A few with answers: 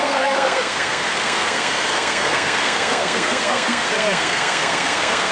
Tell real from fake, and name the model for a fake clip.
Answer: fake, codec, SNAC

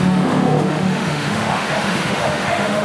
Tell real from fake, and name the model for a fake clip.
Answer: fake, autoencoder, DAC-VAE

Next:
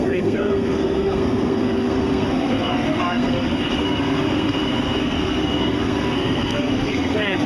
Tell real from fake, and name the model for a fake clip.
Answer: fake, codec, SNAC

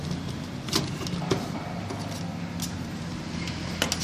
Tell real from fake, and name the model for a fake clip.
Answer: real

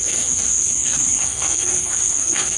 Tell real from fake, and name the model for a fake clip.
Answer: fake, codec, SNAC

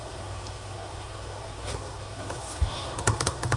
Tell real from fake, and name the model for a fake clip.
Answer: fake, codec, SNAC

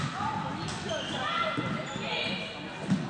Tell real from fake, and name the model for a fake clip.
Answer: real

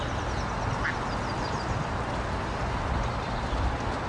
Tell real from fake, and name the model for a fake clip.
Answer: real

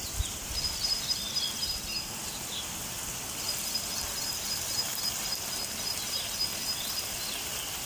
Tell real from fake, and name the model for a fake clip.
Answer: real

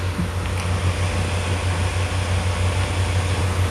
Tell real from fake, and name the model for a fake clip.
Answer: real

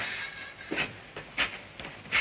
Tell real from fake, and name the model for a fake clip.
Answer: real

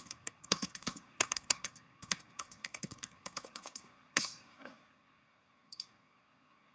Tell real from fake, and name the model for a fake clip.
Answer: fake, codec, SNAC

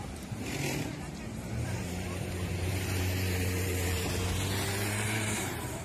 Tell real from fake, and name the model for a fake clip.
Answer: fake, vocoder, BigVGAN v2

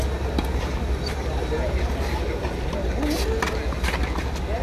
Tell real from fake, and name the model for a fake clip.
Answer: real